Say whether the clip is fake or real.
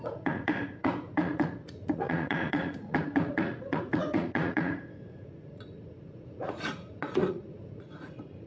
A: fake